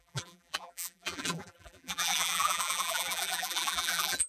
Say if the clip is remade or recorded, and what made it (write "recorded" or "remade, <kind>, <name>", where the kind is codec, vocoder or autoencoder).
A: remade, vocoder, BigVGAN v2